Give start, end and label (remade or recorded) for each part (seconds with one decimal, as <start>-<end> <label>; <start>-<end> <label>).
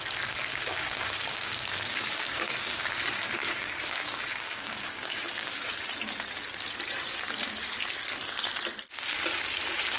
0.0-0.5 recorded; 0.5-2.9 remade; 2.9-3.4 recorded; 3.4-5.7 remade; 5.7-10.0 recorded